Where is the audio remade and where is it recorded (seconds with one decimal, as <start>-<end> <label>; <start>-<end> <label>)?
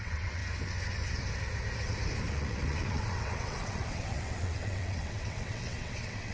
0.0-0.4 remade; 0.4-2.3 recorded; 2.3-6.3 remade